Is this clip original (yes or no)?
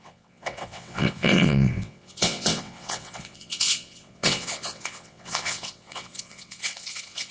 no